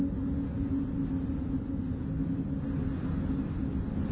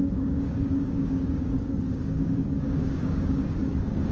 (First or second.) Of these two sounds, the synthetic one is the second